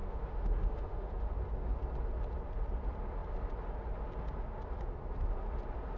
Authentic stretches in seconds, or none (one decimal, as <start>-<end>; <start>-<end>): 1.3-6.0